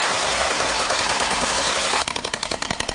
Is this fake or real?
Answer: fake